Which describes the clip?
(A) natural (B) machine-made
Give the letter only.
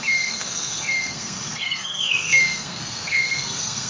B